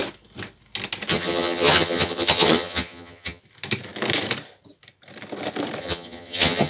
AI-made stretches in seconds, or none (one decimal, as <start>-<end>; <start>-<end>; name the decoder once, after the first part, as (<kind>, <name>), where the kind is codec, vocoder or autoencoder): 1.1-3.4 (vocoder, HiFi-GAN); 5.8-6.7